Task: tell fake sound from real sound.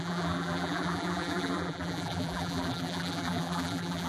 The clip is fake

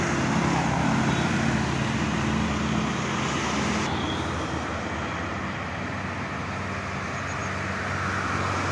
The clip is real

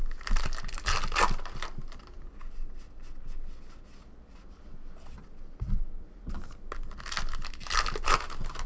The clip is real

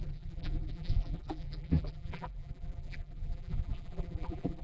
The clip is fake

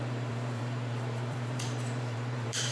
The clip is fake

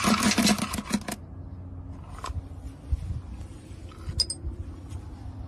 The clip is real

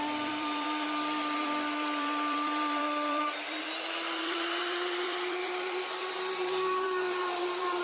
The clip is fake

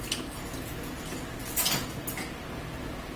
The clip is real